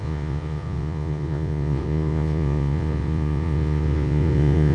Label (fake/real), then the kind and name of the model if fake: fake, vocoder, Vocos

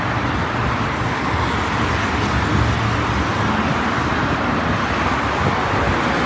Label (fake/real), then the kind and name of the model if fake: real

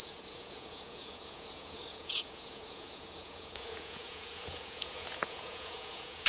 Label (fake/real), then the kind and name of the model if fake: fake, vocoder, Vocos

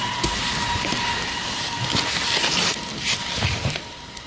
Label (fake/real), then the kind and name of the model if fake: real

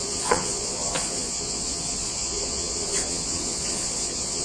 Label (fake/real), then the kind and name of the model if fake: fake, vocoder, Vocos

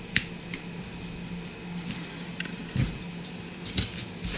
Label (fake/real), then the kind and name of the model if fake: real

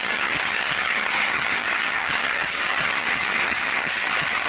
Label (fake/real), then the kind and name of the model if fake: fake, vocoder, HiFi-GAN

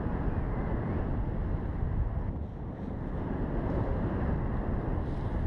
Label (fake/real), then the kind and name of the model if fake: real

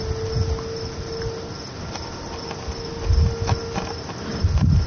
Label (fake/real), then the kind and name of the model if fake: real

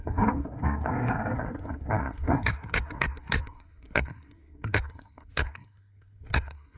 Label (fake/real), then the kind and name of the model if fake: fake, codec, SNAC